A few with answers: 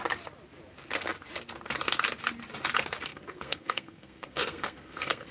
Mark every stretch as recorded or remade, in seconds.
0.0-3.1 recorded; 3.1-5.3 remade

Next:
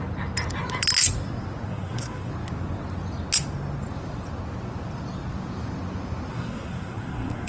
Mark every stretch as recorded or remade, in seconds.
0.0-1.7 recorded; 1.7-2.3 remade; 2.3-6.3 recorded; 6.3-7.5 remade

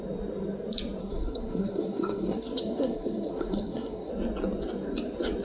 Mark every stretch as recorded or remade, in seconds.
0.0-1.0 recorded; 1.0-4.1 remade; 4.1-5.4 recorded

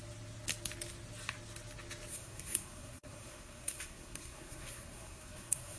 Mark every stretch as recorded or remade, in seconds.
0.0-2.1 recorded; 2.1-5.8 remade

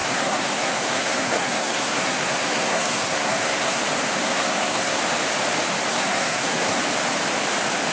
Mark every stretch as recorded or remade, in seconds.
0.0-3.8 remade; 3.8-4.2 recorded; 4.2-5.0 remade; 5.0-5.9 recorded; 5.9-6.8 remade; 6.8-7.9 recorded